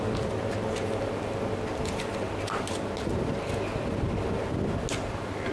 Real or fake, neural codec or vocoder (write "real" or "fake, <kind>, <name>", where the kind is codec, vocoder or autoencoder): real